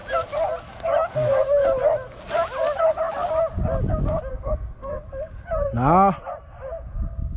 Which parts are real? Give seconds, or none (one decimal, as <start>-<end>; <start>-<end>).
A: 0.0-4.3; 5.0-7.4